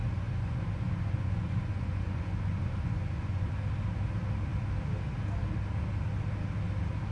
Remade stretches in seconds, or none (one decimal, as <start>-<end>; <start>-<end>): 0.0-3.5